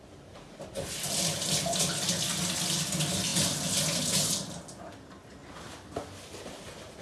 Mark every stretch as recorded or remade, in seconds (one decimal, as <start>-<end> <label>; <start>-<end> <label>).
0.0-7.0 recorded